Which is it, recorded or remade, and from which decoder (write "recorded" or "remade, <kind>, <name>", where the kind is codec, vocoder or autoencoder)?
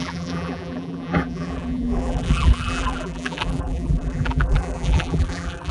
remade, vocoder, BigVGAN v2